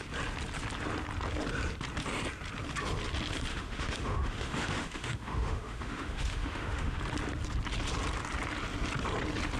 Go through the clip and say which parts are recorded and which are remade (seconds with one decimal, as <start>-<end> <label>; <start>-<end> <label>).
0.0-3.5 recorded; 3.5-7.0 remade; 7.0-9.6 recorded